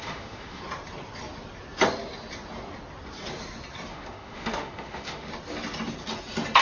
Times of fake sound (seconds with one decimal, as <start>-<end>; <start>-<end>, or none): 0.0-0.6; 3.9-5.3